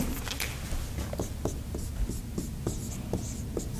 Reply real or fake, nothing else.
real